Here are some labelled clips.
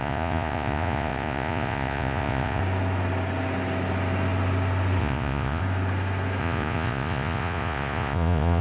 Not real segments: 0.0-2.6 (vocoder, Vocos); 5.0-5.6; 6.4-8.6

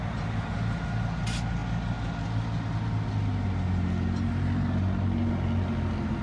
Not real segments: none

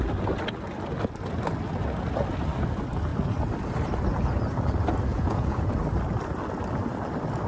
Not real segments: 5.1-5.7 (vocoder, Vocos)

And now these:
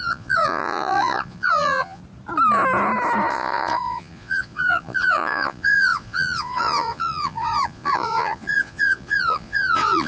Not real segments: 0.0-2.0 (vocoder, Vocos); 3.3-10.1

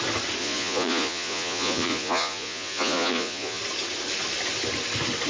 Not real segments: 0.4-3.6 (vocoder, Vocos)

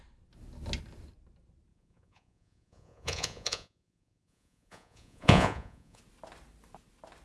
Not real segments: 1.7-6.0 (vocoder, Vocos)

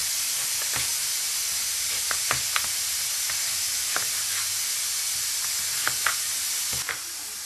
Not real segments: none

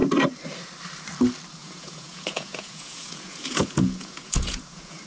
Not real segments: 1.6-5.1 (vocoder, Vocos)